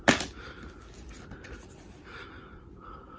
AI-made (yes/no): no